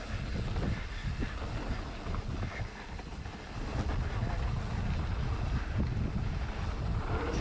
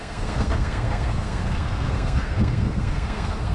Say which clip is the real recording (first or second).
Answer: first